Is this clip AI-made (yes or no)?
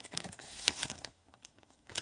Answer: yes